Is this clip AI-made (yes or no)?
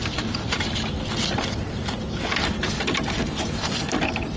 no